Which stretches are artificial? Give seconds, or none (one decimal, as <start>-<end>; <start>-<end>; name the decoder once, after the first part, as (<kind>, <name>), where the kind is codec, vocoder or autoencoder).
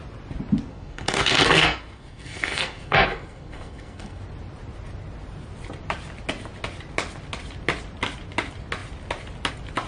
0.7-4.2 (codec, SNAC)